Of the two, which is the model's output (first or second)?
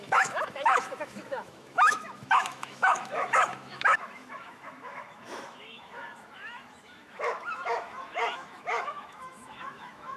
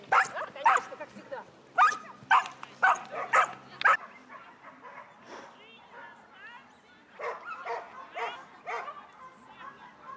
first